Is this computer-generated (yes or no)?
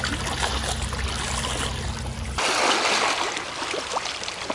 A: no